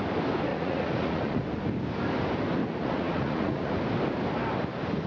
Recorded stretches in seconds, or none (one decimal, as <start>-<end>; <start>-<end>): 0.0-0.5; 1.4-2.6; 3.7-5.1

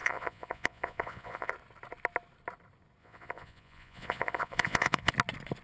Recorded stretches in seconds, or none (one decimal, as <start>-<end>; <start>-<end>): 1.5-3.0; 5.1-5.6

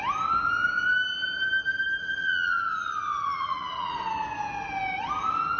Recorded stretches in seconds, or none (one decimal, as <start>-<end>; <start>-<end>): 0.0-2.0; 4.1-5.6

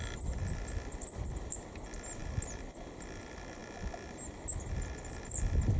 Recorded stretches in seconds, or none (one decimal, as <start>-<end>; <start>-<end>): 0.0-5.8

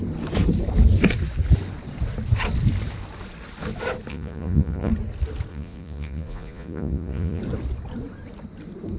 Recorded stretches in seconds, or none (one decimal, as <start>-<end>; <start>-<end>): 0.0-4.1; 4.9-5.5; 7.4-9.0

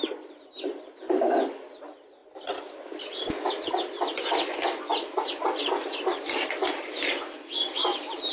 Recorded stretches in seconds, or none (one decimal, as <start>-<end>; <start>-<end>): 0.0-8.3